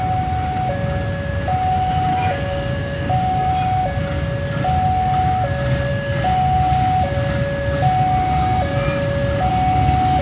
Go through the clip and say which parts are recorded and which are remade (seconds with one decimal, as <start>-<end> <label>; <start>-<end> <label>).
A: 0.0-2.1 recorded; 2.1-3.5 remade; 3.5-10.2 recorded